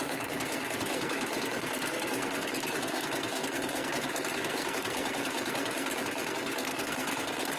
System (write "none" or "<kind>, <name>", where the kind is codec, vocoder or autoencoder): codec, SNAC